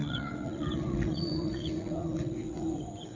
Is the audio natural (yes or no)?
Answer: no